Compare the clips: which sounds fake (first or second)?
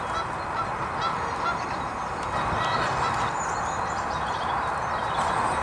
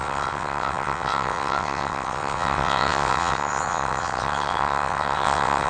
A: second